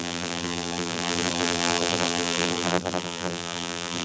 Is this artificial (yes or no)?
yes